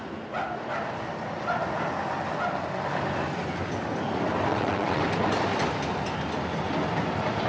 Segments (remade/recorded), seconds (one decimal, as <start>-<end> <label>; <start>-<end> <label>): 0.0-4.5 recorded; 4.5-5.0 remade; 5.0-7.5 recorded